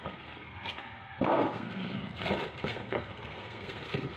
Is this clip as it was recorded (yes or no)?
no